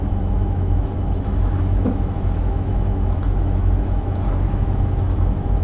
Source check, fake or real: fake